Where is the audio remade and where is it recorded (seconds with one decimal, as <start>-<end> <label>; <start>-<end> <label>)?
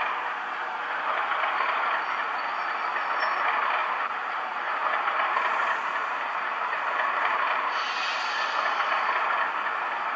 0.0-1.1 recorded; 1.1-2.3 remade; 2.3-3.8 recorded; 3.8-9.1 remade; 9.1-10.2 recorded